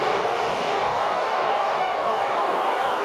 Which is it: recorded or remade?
remade